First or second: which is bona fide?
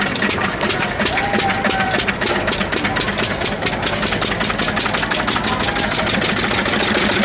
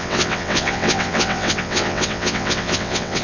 first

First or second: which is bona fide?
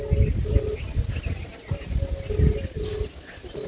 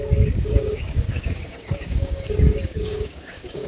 first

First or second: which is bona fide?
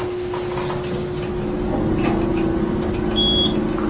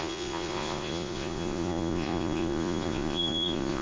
first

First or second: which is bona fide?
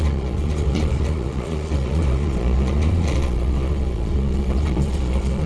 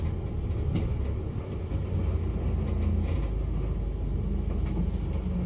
second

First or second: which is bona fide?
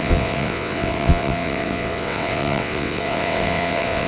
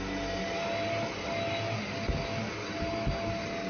second